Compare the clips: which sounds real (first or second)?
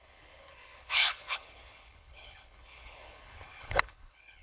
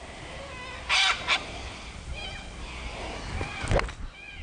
second